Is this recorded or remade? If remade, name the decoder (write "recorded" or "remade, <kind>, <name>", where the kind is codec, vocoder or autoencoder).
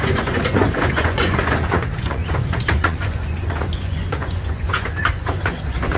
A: remade, vocoder, Vocos